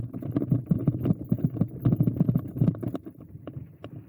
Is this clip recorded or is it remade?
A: recorded